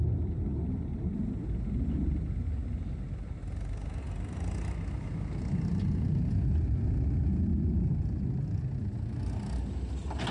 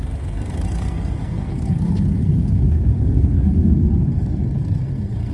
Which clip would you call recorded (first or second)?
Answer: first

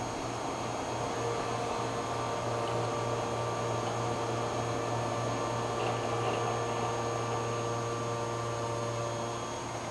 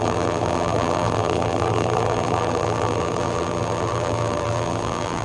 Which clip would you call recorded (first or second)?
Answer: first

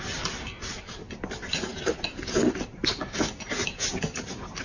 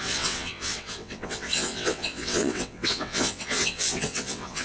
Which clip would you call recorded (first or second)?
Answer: first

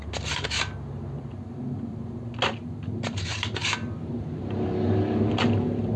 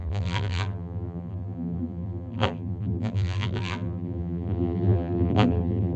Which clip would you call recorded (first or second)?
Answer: first